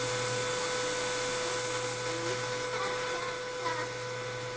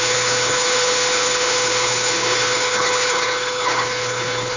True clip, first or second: first